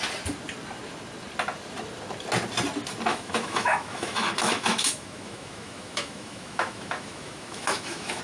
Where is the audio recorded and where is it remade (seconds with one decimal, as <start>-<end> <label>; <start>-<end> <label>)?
0.0-3.1 recorded; 3.1-8.2 remade